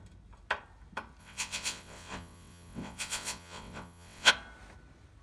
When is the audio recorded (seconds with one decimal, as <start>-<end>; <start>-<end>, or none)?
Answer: 0.0-1.2; 4.3-5.2